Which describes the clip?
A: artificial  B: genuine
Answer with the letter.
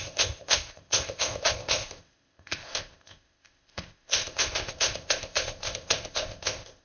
A